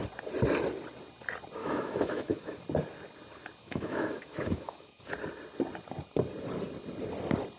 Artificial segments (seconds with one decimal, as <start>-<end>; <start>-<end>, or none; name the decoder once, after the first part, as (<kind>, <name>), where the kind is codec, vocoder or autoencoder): 1.6-2.6 (autoencoder, DAC-VAE); 3.6-5.1